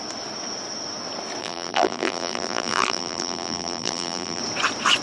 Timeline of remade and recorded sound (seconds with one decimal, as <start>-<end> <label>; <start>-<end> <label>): 0.0-1.4 recorded; 1.4-4.4 remade; 4.4-5.0 recorded